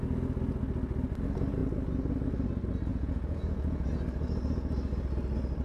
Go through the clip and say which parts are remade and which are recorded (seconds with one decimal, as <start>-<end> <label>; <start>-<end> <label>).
0.0-2.9 recorded; 2.9-3.9 remade; 3.9-5.6 recorded